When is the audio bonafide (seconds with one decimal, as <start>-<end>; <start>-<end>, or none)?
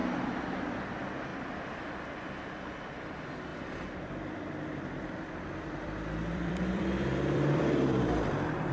0.0-1.3; 1.9-3.5